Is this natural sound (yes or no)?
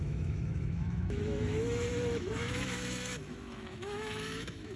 no